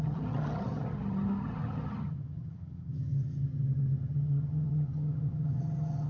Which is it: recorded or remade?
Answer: remade